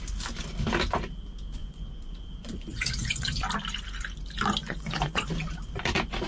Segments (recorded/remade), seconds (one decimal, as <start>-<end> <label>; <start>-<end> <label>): 0.0-1.6 recorded; 1.6-3.3 remade; 3.3-4.6 recorded; 4.6-5.3 remade; 5.3-6.3 recorded